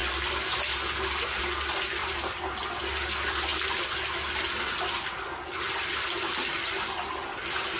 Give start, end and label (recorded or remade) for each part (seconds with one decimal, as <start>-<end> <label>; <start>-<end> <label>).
0.0-2.0 recorded; 2.0-2.5 remade; 2.5-7.8 recorded